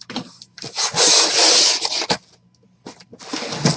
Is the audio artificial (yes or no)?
no